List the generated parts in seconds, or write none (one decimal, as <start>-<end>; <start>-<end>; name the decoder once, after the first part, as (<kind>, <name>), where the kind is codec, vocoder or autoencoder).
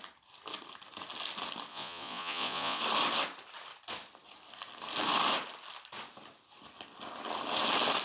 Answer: 1.7-2.8 (vocoder, Vocos)